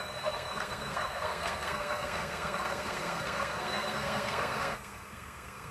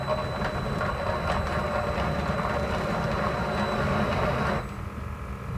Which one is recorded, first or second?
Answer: second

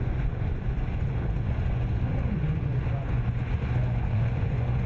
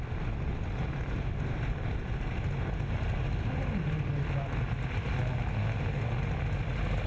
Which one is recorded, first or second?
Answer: second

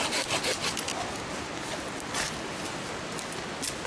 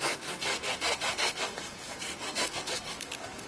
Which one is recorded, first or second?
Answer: first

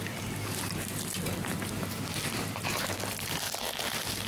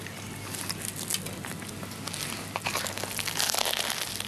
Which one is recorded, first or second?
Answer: second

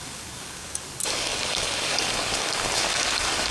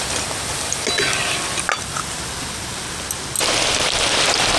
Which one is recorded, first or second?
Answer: second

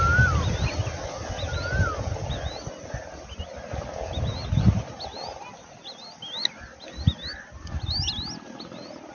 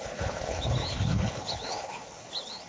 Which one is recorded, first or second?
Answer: first